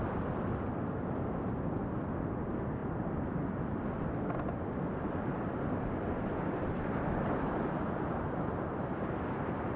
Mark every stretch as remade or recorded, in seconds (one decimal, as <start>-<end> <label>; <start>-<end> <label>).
0.0-9.8 recorded